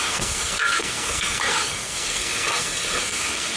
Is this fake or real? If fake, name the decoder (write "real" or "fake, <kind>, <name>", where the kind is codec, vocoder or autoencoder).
fake, codec, SNAC